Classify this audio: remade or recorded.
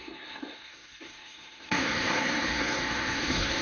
remade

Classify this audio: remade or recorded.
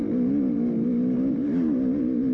recorded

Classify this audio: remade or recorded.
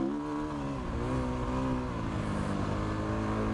recorded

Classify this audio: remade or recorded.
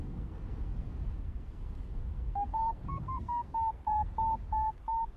remade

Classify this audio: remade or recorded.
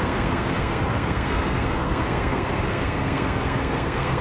remade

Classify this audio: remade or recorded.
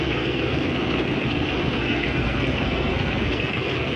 remade